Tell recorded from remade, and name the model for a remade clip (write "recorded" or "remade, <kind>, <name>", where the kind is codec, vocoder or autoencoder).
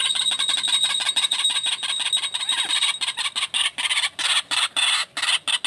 recorded